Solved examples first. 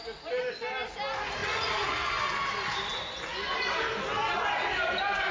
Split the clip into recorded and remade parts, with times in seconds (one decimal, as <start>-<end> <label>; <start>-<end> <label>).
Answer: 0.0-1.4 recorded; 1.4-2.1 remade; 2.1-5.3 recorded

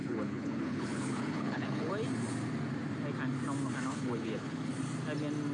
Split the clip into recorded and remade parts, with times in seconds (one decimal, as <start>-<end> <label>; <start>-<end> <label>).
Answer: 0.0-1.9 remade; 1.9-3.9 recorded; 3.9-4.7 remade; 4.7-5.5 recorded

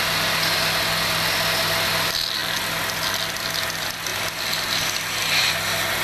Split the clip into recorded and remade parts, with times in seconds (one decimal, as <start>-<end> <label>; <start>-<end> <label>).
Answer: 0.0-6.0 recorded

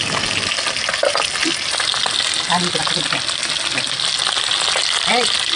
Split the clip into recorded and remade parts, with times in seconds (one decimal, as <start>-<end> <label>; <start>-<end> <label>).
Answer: 0.0-5.5 recorded